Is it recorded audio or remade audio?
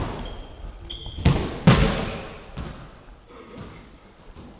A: recorded